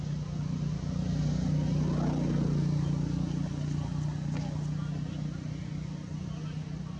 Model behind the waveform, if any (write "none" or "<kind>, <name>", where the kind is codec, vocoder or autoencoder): none